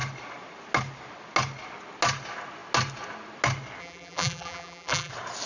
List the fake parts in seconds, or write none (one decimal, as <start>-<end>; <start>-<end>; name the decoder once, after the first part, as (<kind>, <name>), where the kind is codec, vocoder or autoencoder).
3.8-5.1 (vocoder, BigVGAN v2)